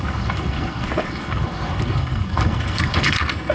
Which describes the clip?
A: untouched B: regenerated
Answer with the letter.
B